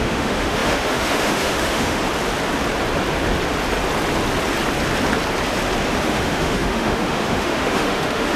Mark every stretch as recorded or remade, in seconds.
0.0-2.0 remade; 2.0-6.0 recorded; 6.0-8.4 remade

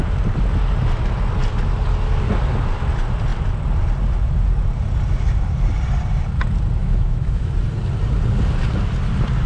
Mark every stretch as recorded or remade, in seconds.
0.0-6.8 recorded; 6.8-7.5 remade; 7.5-9.5 recorded

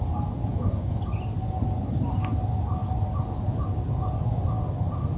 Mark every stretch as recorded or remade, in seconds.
0.0-0.5 recorded; 0.5-1.0 remade; 1.0-5.2 recorded

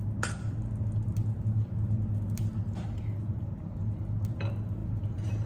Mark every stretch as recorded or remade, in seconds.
0.0-5.5 recorded

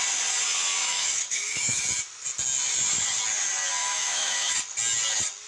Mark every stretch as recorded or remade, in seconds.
0.0-0.8 recorded; 0.8-1.8 remade; 1.8-3.8 recorded; 3.8-4.5 remade; 4.5-5.5 recorded

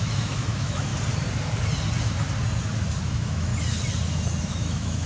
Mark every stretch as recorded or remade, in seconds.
0.0-0.9 remade; 0.9-3.0 recorded; 3.0-3.5 remade; 3.5-4.4 recorded; 4.4-5.1 remade

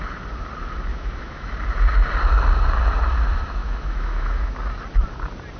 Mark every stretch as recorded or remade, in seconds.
0.0-0.9 recorded; 0.9-1.5 remade; 1.5-3.6 recorded; 3.6-4.5 remade; 4.5-5.6 recorded

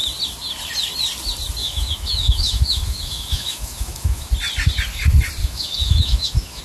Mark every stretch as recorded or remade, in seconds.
0.0-1.6 recorded; 1.6-4.3 remade; 4.3-5.4 recorded; 5.4-6.6 remade